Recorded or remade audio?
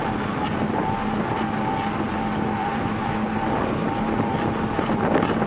recorded